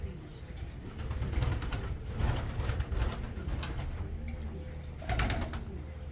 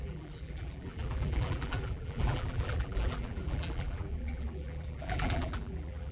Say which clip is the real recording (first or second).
first